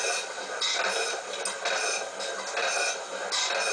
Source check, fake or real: real